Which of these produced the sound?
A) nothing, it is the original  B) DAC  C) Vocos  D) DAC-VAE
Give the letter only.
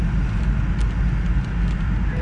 A